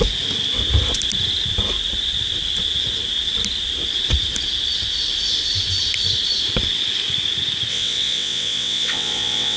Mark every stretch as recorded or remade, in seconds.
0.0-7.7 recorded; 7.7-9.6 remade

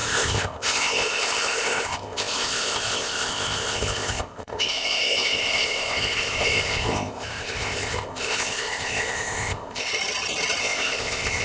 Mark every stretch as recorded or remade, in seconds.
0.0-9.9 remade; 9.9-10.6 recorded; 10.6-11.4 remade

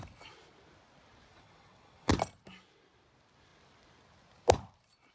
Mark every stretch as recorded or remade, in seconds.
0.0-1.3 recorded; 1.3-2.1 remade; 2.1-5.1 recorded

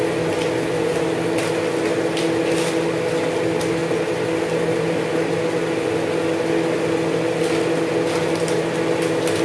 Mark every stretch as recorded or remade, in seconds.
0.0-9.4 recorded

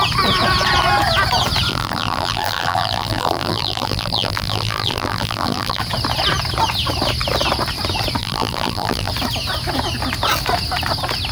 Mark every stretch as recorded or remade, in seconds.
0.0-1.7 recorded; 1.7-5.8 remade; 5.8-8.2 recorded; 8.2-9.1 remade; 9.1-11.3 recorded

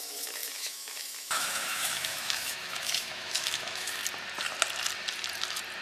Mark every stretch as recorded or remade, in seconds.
0.0-4.0 remade; 4.0-5.8 recorded

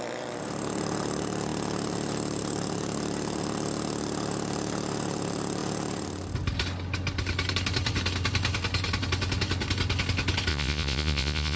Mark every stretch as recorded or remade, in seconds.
0.0-10.5 recorded; 10.5-11.6 remade